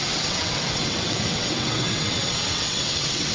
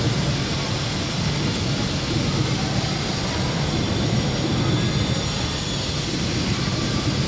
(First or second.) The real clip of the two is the second